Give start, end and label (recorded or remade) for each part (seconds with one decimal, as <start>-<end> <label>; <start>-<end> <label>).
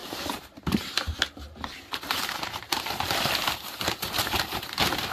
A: 0.0-5.1 remade